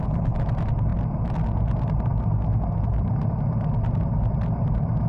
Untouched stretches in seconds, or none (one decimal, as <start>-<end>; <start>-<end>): 0.0-5.1